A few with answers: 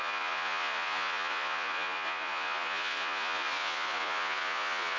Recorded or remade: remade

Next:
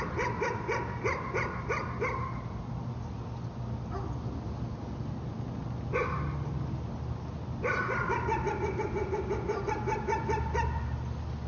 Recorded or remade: recorded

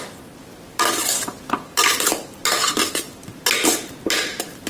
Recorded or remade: recorded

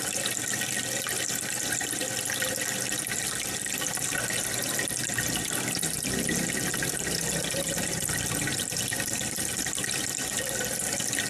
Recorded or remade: recorded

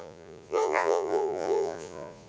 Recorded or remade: remade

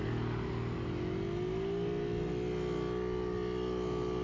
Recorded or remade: recorded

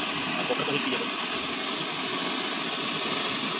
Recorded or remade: recorded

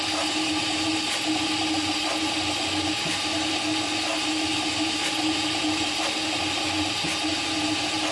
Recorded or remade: recorded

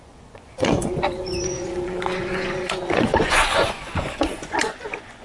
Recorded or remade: remade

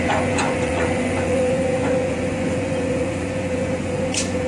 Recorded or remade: remade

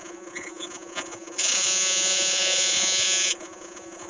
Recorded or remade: remade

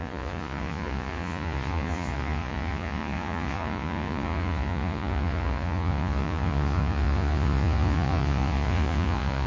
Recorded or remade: remade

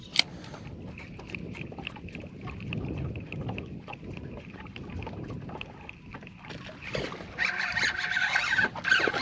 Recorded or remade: recorded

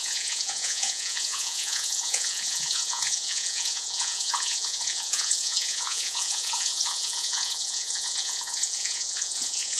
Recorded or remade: remade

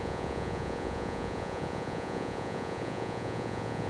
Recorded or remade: remade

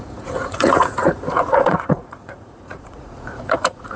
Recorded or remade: remade